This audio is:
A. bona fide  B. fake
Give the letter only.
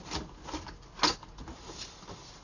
A